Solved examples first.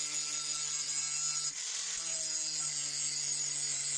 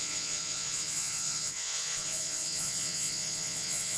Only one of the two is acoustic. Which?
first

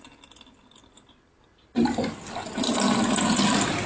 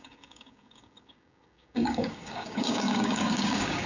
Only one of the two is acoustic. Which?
first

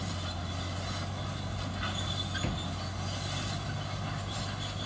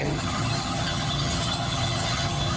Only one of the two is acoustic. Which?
first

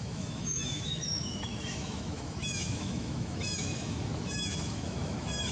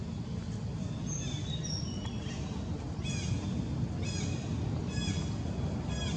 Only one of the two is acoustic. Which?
second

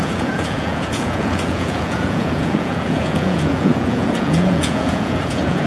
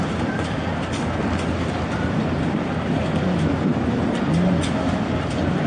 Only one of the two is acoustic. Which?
second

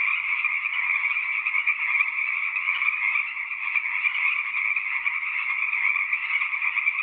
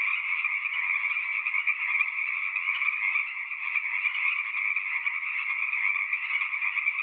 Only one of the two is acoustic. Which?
second